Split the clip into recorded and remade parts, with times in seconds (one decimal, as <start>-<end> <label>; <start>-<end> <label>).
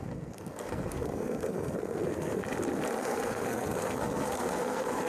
0.0-2.4 remade; 2.4-3.0 recorded; 3.0-5.1 remade